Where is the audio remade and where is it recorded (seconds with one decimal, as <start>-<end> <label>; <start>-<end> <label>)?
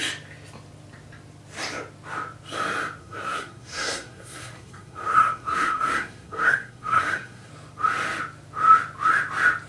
0.0-3.0 recorded; 3.0-7.5 remade; 7.5-9.7 recorded